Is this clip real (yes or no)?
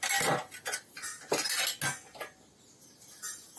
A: yes